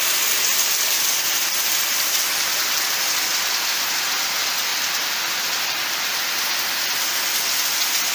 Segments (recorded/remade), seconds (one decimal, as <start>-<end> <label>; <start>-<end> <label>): 0.0-8.1 recorded